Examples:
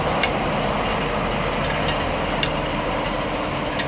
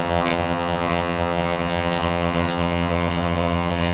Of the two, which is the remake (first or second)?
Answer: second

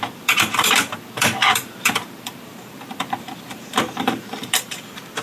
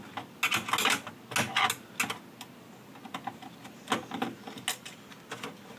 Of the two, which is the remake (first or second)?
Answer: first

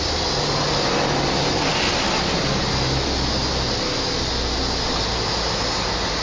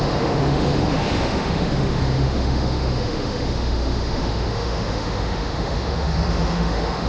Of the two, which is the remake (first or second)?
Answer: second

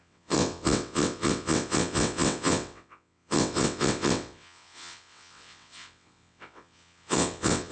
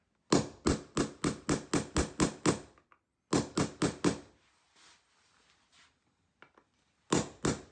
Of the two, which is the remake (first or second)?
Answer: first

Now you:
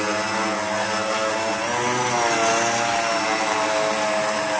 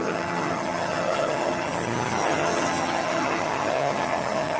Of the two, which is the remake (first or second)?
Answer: second